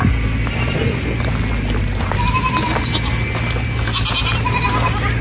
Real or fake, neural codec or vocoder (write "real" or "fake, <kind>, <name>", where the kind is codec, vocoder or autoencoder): real